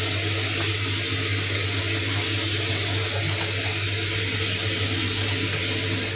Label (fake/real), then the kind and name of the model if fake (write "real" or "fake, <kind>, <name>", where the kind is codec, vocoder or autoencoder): real